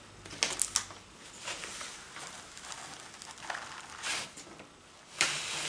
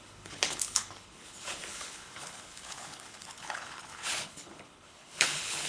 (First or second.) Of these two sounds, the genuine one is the first